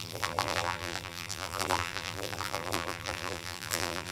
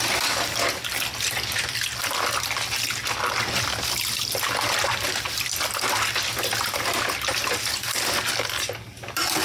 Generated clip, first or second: first